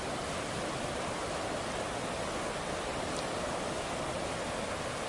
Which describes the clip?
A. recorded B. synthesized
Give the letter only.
A